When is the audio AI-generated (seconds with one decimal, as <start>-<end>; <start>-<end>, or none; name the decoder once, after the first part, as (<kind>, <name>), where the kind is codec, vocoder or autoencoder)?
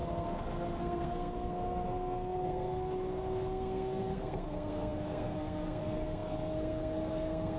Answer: 0.0-7.6 (codec, SNAC)